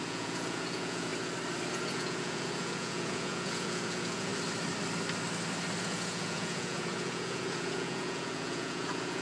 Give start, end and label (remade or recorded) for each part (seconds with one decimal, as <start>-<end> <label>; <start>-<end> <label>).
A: 0.0-1.1 remade; 1.1-1.7 recorded; 1.7-4.3 remade; 4.3-5.8 recorded; 5.8-9.2 remade